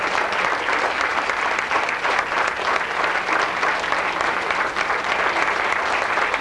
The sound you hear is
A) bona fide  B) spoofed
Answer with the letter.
B